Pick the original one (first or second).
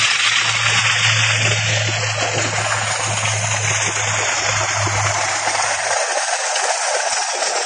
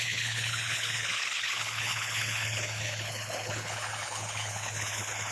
first